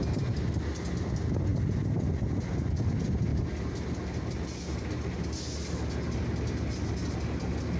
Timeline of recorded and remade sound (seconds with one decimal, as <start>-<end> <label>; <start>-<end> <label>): 0.0-7.8 recorded